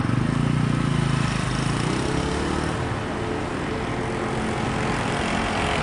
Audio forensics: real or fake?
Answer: real